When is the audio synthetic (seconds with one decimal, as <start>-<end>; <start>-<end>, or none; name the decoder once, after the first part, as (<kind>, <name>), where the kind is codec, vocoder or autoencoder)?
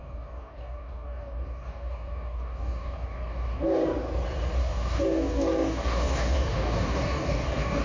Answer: 0.0-3.9 (codec, DAC); 4.6-7.8